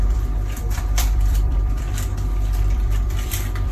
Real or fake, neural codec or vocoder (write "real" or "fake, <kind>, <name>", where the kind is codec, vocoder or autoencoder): fake, vocoder, BigVGAN v2